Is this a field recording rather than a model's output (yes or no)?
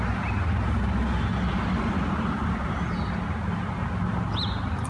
yes